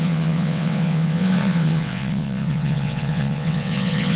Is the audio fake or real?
fake